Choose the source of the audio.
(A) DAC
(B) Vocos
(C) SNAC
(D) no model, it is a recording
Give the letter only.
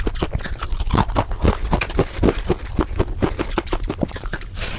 D